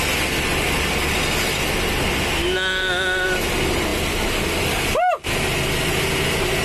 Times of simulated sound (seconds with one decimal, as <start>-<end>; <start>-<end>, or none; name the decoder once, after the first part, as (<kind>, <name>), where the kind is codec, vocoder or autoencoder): 2.4-3.5 (autoencoder, DAC-VAE)